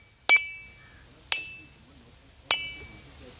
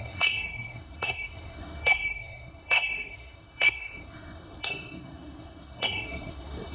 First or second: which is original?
first